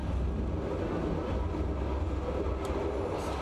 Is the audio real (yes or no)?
yes